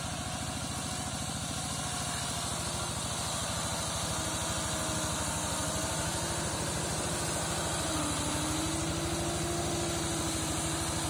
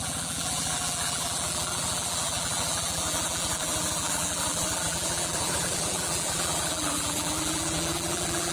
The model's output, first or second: second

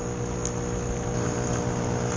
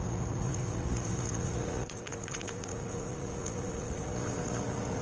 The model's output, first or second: second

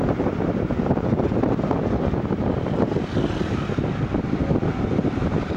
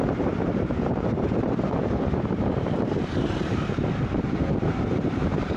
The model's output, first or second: second